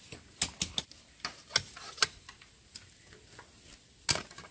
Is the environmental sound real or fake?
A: real